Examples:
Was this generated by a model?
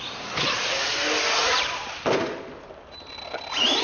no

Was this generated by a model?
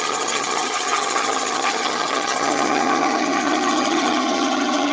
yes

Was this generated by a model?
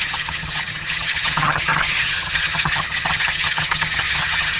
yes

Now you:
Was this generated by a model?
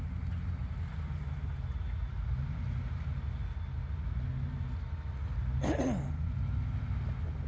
no